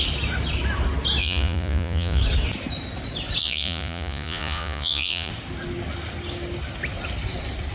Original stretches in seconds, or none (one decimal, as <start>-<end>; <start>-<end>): 0.0-1.2; 2.2-3.4; 5.3-7.7